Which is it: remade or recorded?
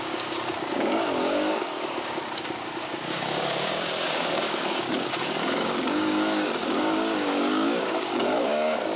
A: remade